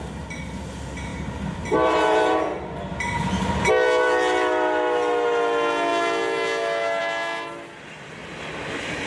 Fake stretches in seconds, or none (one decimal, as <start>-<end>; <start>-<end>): 1.1-3.2